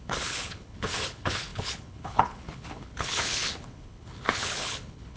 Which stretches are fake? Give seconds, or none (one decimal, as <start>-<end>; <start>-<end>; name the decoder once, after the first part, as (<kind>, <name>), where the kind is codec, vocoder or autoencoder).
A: 0.0-5.2 (codec, HILCodec)